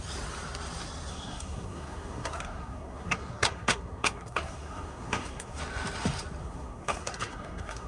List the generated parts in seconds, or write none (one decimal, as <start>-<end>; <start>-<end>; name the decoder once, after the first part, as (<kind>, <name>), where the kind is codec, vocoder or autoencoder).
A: 1.1-5.6 (codec, SNAC); 6.4-7.9